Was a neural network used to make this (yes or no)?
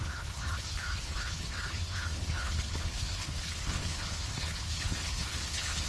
yes